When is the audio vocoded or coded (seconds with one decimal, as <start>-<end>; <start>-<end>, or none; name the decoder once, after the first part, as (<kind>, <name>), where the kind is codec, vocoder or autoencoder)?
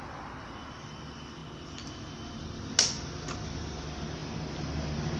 none